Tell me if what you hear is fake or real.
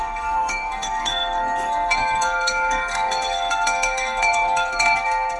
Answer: fake